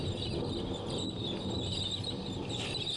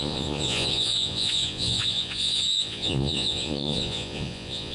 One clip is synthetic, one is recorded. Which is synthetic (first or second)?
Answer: second